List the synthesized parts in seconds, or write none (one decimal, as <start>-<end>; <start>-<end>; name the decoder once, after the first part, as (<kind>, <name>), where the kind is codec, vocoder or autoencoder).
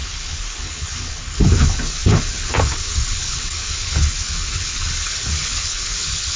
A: 0.0-6.4 (codec, HILCodec)